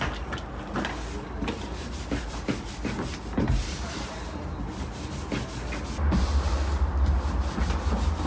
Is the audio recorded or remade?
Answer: recorded